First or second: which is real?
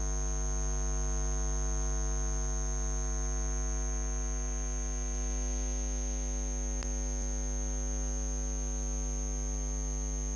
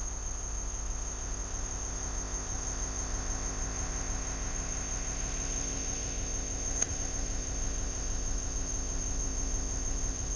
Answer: first